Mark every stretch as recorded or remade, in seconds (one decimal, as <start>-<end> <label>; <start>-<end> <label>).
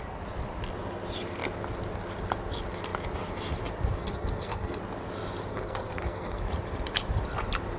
0.0-4.0 recorded; 4.0-4.8 remade; 4.8-5.5 recorded; 5.5-6.4 remade; 6.4-7.8 recorded